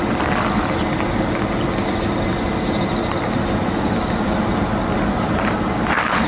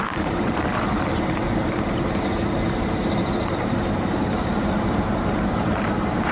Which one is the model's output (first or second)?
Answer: second